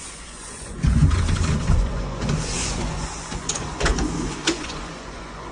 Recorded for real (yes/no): no